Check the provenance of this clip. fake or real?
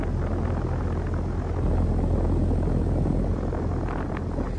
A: real